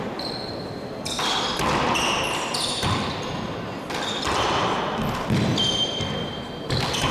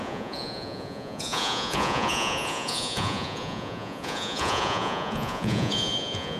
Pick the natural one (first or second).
first